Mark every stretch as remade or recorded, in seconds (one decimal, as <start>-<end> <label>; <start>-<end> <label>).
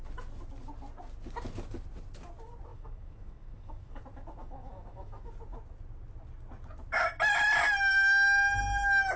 0.0-2.7 recorded; 2.7-4.0 remade; 4.0-4.4 recorded; 4.4-5.3 remade; 5.3-9.2 recorded